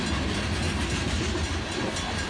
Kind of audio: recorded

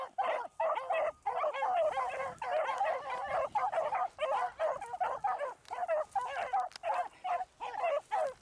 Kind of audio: recorded